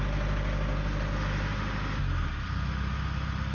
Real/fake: real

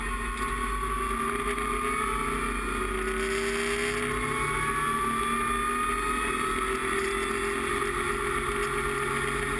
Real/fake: real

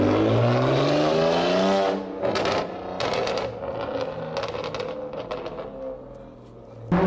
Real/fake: real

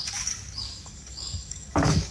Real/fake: fake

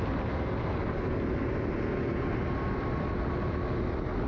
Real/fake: real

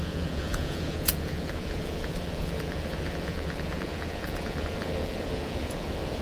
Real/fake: fake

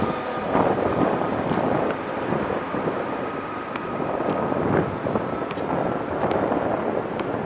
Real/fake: fake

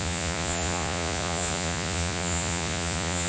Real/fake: fake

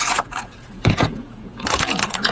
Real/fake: fake